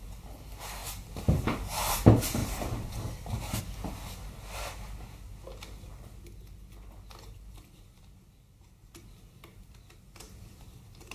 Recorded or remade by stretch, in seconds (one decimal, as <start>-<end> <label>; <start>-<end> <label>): 0.0-11.1 recorded